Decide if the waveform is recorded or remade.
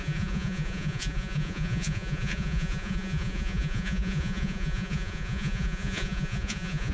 remade